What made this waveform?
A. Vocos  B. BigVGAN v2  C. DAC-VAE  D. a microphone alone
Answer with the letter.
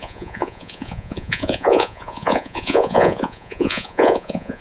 A